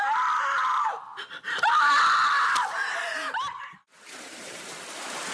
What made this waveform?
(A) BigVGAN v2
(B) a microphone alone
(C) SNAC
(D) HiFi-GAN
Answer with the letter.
A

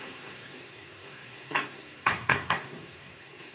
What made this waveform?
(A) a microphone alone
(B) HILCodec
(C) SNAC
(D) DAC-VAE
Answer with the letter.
C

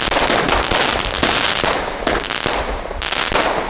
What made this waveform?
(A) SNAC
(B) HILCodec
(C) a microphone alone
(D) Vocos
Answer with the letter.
C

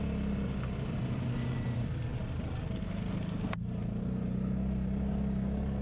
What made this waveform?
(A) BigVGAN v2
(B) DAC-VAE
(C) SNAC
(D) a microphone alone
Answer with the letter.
D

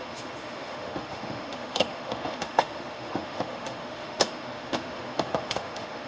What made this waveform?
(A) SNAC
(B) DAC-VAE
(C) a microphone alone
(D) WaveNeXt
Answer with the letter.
B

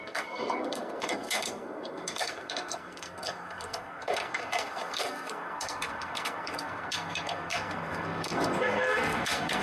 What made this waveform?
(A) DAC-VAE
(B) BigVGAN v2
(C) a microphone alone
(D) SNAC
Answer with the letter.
D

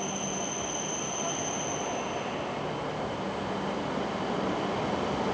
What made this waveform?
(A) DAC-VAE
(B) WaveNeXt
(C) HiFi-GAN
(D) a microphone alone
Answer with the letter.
D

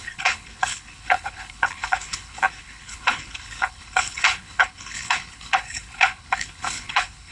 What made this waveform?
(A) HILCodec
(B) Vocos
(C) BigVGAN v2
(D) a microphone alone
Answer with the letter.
A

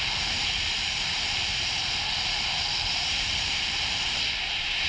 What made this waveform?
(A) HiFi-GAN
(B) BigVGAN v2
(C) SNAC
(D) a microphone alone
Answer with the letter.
B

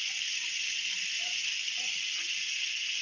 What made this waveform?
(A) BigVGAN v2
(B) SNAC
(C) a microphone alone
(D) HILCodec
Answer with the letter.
C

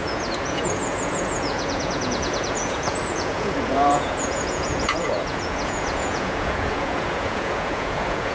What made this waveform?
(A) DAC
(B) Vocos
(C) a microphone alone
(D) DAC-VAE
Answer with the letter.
B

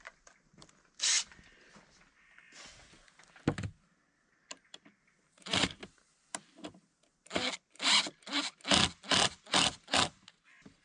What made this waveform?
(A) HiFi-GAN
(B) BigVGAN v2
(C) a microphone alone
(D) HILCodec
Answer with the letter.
C